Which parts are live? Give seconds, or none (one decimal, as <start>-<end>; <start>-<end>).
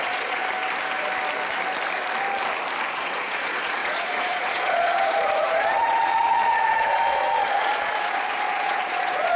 0.4-2.9